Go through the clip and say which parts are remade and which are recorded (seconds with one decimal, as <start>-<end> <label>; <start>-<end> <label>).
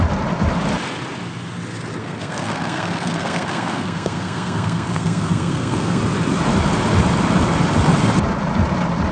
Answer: 0.0-2.0 recorded; 2.0-6.0 remade; 6.0-9.1 recorded